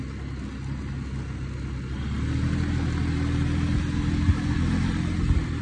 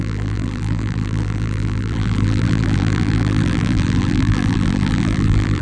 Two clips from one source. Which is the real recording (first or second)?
first